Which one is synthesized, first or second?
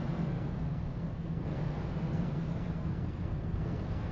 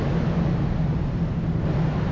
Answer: first